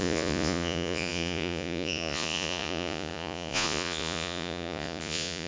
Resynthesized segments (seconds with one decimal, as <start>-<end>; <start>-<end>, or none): 0.0-5.5